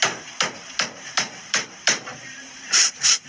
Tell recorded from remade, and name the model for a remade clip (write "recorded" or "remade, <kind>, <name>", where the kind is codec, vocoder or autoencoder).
remade, vocoder, BigVGAN v2